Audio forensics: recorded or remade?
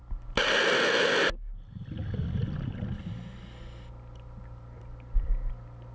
recorded